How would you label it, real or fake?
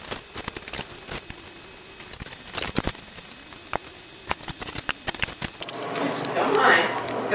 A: real